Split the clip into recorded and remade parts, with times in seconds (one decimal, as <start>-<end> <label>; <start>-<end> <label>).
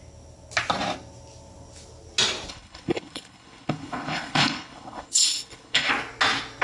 0.0-2.5 recorded; 2.5-5.9 remade; 5.9-6.6 recorded